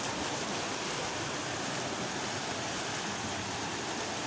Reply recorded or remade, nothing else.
recorded